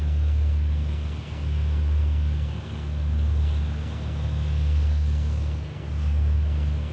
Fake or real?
fake